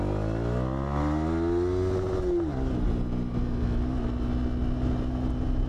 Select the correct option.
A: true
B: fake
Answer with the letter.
A